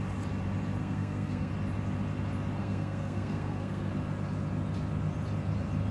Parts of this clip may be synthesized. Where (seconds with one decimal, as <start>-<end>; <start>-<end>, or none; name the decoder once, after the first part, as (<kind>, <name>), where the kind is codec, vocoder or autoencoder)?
0.8-1.5 (codec, SNAC); 2.6-3.9